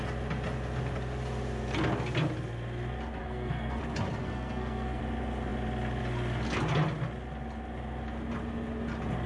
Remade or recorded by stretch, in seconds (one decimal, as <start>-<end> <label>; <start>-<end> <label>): 0.0-3.2 recorded; 3.2-3.8 remade; 3.8-4.2 recorded; 4.2-5.0 remade; 5.0-9.3 recorded